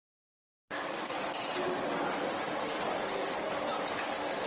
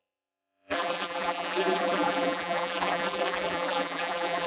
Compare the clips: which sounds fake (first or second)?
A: second